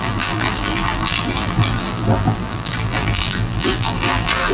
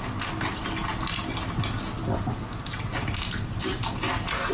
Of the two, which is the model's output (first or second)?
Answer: first